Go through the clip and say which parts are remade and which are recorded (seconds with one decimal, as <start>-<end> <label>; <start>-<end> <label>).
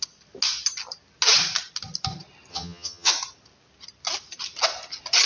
0.0-2.5 recorded; 2.5-3.1 remade; 3.1-5.3 recorded